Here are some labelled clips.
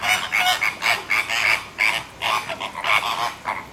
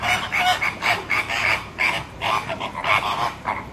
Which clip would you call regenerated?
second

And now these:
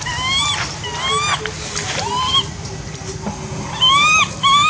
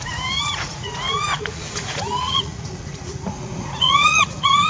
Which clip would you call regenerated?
second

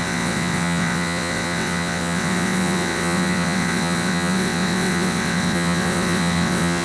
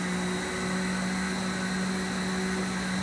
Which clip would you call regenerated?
first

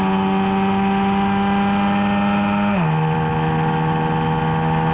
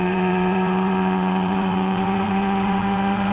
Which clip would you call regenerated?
second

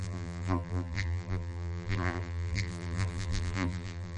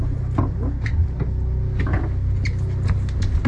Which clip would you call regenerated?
first